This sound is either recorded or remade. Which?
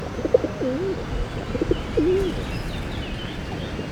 recorded